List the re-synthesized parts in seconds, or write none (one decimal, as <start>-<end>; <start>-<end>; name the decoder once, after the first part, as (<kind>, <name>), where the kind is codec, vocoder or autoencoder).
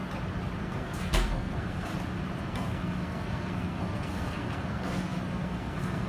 0.6-1.9 (codec, SNAC); 2.4-6.1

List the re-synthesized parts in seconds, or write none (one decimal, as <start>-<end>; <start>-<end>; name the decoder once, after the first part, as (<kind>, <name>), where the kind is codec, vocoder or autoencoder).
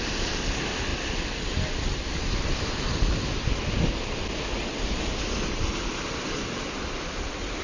none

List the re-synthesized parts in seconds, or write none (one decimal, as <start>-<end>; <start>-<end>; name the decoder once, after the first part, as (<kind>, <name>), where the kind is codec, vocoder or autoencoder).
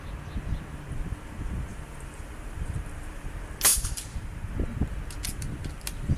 1.7-3.3 (vocoder, BigVGAN v2); 3.7-4.5